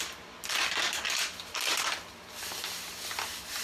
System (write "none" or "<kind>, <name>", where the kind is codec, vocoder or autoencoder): none